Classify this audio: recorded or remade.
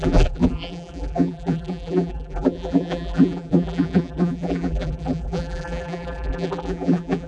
remade